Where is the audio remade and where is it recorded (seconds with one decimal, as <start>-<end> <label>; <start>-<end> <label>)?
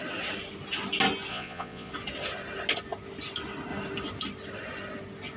0.0-1.3 recorded; 1.3-1.9 remade; 1.9-5.4 recorded